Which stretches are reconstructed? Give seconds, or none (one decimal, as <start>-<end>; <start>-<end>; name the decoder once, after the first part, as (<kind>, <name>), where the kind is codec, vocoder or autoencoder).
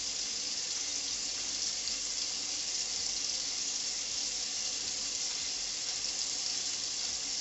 none